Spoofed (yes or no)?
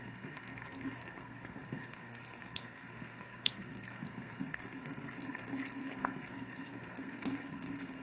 yes